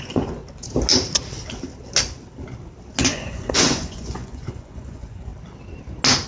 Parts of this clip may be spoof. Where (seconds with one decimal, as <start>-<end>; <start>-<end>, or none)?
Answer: 0.0-0.4; 3.0-5.3